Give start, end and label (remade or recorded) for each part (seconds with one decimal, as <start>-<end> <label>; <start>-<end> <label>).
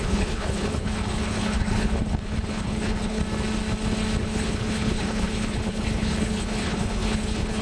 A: 0.0-3.2 remade; 3.2-4.2 recorded; 4.2-7.6 remade